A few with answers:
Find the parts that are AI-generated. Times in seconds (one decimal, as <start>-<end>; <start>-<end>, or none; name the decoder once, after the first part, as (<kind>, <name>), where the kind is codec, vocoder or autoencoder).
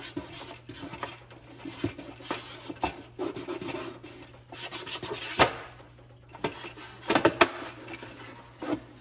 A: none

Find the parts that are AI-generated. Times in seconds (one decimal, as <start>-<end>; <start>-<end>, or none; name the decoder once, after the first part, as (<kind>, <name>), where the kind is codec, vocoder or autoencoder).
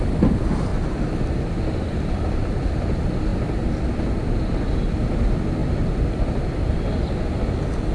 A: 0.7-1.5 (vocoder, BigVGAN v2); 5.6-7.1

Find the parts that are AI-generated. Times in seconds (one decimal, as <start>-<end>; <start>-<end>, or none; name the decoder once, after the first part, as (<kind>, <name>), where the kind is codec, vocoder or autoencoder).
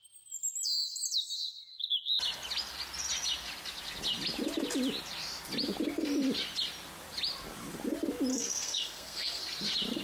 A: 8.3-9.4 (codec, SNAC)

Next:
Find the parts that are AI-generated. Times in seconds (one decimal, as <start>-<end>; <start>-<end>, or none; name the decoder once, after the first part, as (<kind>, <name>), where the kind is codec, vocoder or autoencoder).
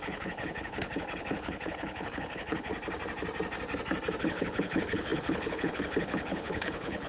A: 0.0-2.7 (codec, HILCodec); 4.2-7.1